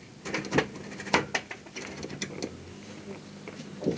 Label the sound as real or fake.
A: real